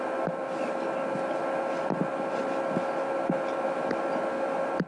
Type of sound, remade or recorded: recorded